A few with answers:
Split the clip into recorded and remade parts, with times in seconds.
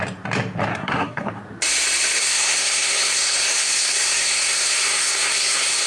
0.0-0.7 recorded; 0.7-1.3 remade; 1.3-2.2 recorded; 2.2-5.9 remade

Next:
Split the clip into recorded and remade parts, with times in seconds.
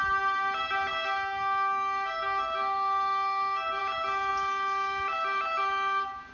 0.0-0.9 recorded; 0.9-3.8 remade; 3.8-6.3 recorded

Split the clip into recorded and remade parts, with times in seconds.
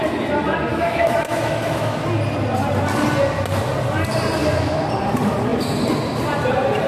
0.0-0.7 recorded; 0.7-2.0 remade; 2.0-4.4 recorded; 4.4-4.9 remade; 4.9-6.9 recorded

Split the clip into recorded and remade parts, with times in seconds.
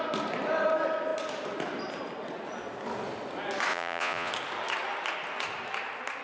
0.0-3.7 recorded; 3.7-4.3 remade; 4.3-6.2 recorded